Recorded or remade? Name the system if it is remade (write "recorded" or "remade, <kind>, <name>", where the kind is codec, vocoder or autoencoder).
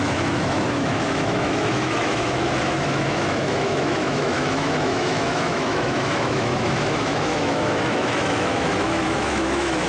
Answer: remade, autoencoder, DAC-VAE